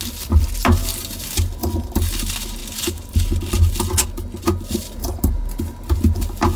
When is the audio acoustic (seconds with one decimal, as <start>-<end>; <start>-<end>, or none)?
0.0-6.6